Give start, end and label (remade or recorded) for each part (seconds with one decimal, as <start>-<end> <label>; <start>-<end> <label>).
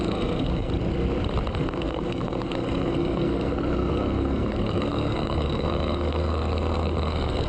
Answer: 0.0-0.7 remade; 0.7-1.5 recorded; 1.5-7.5 remade